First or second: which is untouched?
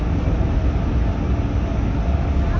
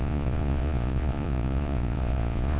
first